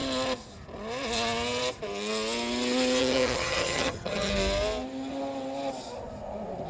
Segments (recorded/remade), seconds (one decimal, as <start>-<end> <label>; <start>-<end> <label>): 0.0-3.0 recorded; 3.0-4.3 remade; 4.3-6.7 recorded